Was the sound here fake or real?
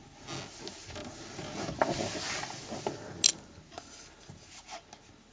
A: real